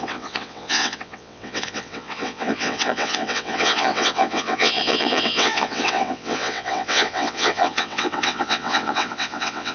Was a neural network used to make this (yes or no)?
yes